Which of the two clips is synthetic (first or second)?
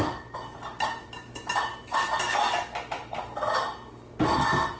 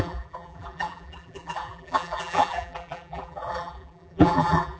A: second